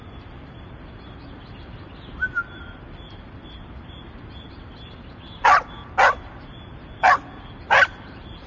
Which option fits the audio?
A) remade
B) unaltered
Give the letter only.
B